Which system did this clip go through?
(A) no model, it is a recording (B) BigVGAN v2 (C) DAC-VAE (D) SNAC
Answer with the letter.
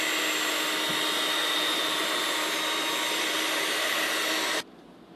A